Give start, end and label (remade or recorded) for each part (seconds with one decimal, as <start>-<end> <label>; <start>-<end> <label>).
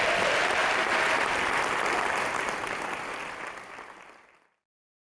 0.0-5.0 recorded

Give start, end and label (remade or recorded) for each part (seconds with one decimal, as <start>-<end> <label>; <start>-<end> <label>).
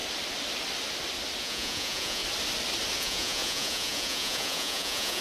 0.0-1.4 recorded; 1.4-2.2 remade; 2.2-3.0 recorded; 3.0-5.2 remade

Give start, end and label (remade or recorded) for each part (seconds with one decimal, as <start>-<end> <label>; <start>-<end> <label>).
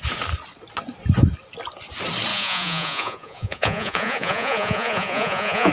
0.0-2.3 recorded; 2.3-5.7 remade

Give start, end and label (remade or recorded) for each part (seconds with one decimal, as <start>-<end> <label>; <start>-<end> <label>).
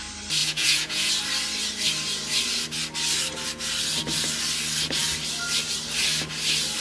0.0-0.4 recorded; 0.4-1.1 remade; 1.1-6.8 recorded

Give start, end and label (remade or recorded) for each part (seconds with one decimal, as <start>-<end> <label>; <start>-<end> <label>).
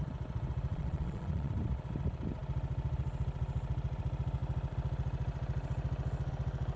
0.0-0.7 recorded; 0.7-1.5 remade; 1.5-6.8 recorded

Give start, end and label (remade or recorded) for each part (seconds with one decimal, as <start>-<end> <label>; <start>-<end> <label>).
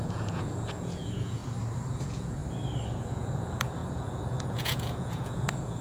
0.0-1.4 remade; 1.4-1.9 recorded; 1.9-2.4 remade; 2.4-3.0 recorded; 3.0-5.8 remade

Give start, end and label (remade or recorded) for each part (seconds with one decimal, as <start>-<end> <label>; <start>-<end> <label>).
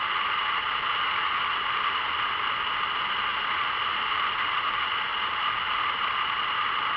0.0-7.0 recorded